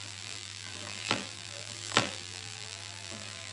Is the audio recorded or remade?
remade